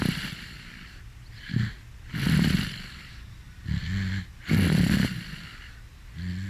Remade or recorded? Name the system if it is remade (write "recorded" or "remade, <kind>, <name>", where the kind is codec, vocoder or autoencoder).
recorded